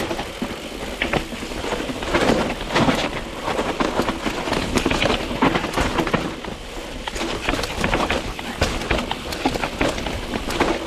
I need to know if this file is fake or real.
real